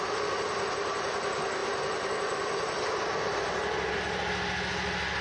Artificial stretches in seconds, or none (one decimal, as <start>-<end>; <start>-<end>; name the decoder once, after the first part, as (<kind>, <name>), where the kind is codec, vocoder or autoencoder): none